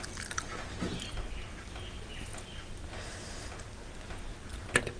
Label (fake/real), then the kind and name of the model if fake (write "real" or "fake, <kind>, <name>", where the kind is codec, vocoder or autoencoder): real